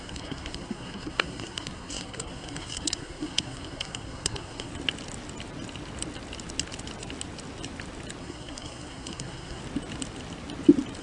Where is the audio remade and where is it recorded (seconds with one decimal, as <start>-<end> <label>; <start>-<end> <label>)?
0.0-4.7 remade; 4.7-8.2 recorded; 8.2-9.6 remade; 9.6-11.0 recorded